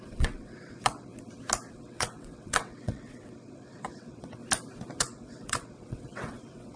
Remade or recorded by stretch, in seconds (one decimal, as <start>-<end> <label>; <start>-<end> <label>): 0.0-1.1 remade; 1.1-1.7 recorded; 1.7-4.4 remade; 4.4-5.0 recorded; 5.0-6.8 remade